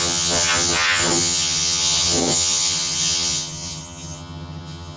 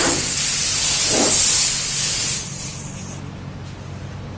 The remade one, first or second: first